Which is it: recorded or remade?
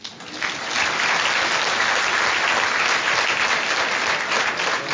recorded